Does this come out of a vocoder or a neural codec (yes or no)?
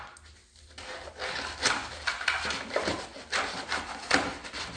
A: no